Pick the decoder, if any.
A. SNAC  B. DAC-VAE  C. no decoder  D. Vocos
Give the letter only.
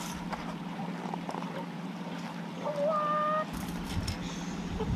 C